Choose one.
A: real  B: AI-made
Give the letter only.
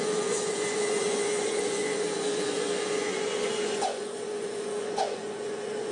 B